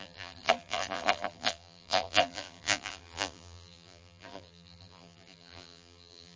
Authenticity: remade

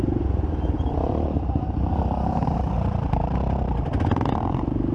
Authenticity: remade